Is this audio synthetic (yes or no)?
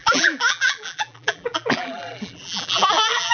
yes